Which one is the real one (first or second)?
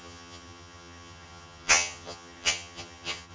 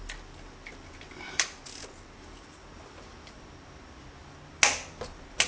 second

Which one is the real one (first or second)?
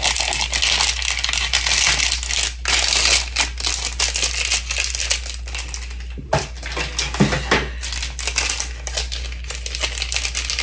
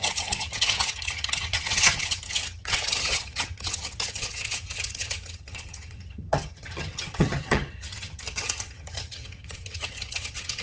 first